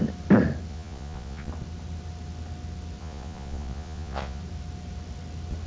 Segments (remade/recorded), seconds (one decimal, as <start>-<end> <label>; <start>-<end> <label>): 0.0-0.7 recorded; 0.7-1.5 remade; 1.5-3.0 recorded; 3.0-4.4 remade; 4.4-5.7 recorded